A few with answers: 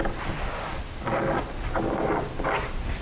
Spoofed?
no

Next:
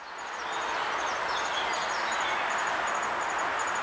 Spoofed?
no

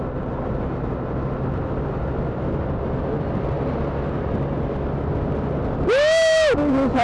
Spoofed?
no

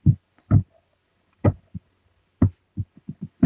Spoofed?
no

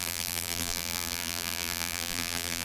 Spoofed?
yes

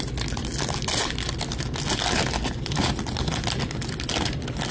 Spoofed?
no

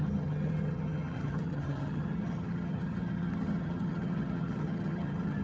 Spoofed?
yes